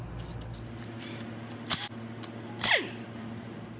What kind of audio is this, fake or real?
real